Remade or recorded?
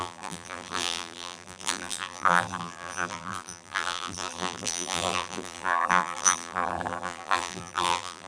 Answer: remade